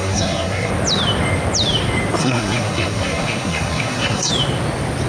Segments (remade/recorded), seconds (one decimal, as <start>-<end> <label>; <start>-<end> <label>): 0.0-0.7 remade; 0.7-2.2 recorded; 2.2-4.3 remade; 4.3-5.1 recorded